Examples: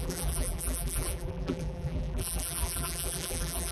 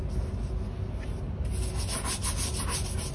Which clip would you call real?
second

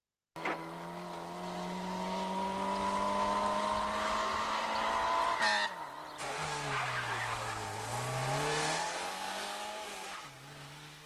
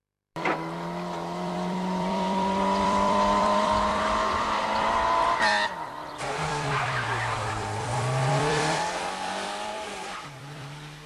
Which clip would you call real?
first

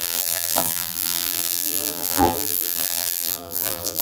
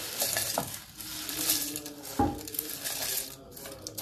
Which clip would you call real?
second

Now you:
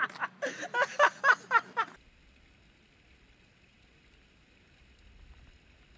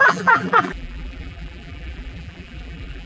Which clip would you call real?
first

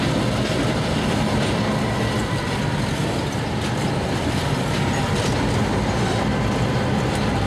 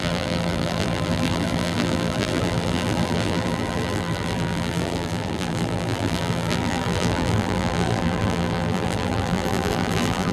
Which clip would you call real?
first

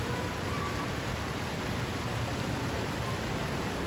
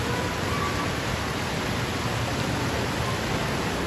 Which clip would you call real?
second